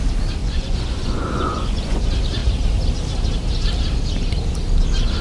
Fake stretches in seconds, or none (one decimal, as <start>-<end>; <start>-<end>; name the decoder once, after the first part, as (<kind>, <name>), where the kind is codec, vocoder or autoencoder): 0.4-2.0 (vocoder, Vocos)